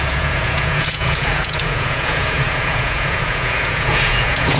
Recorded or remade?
remade